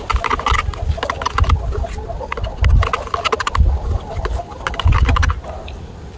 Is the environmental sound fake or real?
real